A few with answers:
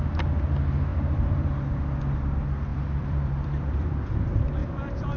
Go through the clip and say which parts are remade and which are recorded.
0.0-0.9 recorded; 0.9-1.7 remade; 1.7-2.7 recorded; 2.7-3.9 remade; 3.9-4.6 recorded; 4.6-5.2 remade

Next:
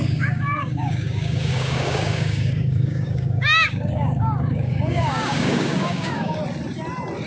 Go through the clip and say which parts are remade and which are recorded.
0.0-6.4 remade; 6.4-7.3 recorded